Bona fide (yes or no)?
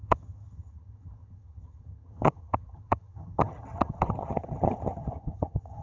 no